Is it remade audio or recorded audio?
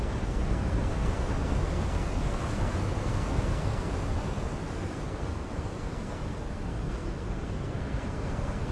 remade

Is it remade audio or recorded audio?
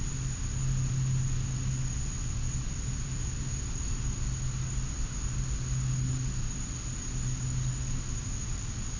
recorded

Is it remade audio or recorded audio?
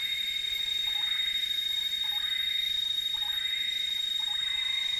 recorded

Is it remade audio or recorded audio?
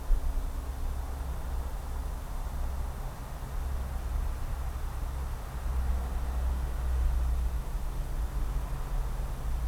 recorded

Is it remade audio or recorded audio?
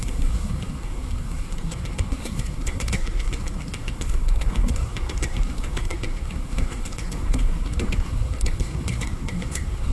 remade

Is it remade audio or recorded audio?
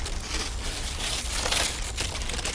recorded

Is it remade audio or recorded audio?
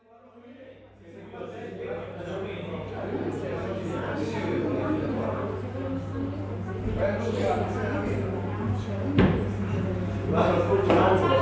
recorded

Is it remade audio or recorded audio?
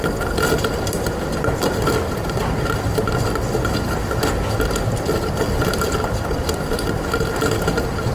recorded